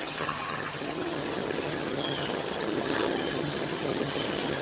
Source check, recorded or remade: remade